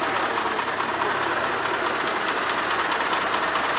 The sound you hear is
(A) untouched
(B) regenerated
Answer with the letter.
A